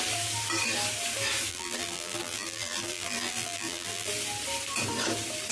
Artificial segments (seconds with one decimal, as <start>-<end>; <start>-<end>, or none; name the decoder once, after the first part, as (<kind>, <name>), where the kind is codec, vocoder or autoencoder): 1.5-4.1 (vocoder, BigVGAN v2)